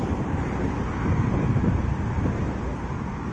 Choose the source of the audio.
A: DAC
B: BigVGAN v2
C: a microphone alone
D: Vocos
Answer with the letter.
B